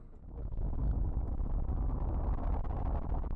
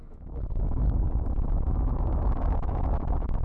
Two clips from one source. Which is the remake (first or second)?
second